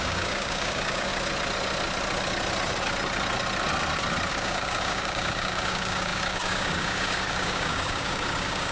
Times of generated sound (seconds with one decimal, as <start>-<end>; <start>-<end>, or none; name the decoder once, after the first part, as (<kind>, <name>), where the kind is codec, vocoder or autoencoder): 0.0-1.1 (codec, DAC); 4.3-8.7